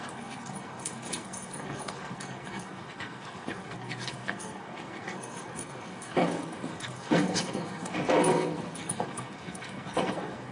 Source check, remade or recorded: remade